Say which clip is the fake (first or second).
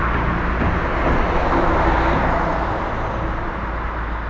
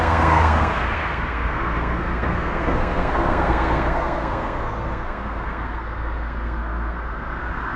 second